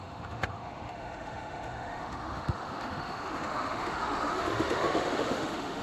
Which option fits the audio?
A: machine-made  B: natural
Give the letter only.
A